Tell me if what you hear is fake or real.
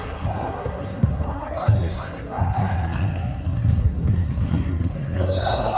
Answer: fake